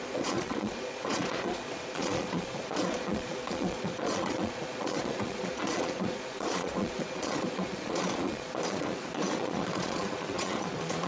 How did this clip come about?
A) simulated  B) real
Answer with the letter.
A